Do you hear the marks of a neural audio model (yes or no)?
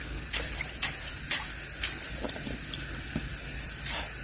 yes